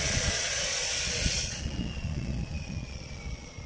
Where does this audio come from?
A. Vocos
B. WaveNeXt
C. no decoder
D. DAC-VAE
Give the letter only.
A